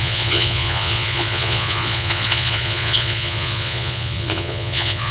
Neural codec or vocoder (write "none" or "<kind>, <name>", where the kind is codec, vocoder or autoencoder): vocoder, Vocos